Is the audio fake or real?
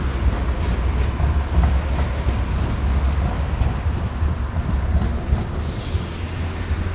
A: real